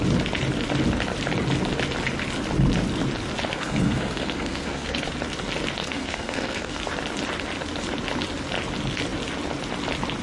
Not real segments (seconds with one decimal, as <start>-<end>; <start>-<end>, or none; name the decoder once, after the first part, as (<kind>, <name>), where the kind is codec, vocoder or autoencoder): 3.5-5.0 (codec, SNAC); 5.8-6.8